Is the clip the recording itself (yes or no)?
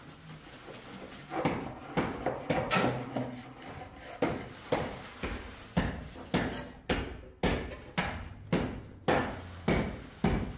yes